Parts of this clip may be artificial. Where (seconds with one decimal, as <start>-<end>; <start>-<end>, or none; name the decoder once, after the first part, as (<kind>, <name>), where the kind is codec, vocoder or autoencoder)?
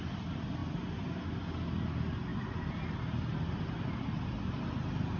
0.6-1.2 (vocoder, BigVGAN v2)